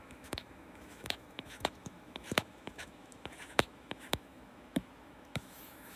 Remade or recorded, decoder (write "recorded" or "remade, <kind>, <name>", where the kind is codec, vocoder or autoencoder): remade, autoencoder, DAC-VAE